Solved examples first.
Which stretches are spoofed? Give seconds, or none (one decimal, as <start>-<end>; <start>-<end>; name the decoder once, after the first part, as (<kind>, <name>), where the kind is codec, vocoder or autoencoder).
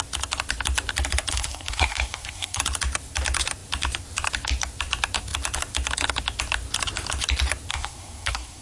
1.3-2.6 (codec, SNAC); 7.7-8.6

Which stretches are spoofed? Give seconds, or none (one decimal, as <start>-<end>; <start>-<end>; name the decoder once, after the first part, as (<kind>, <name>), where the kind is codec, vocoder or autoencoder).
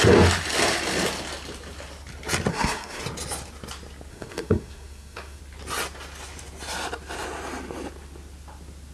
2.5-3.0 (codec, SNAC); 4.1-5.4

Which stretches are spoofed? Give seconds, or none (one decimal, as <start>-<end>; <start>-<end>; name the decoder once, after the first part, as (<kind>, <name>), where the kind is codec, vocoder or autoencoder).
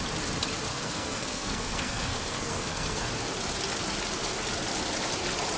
0.7-3.1 (codec, SNAC)